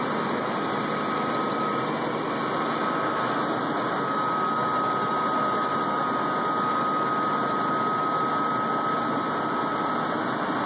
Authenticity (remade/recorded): recorded